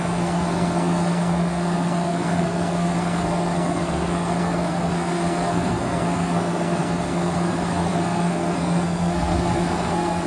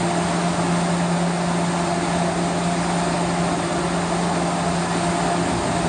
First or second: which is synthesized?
first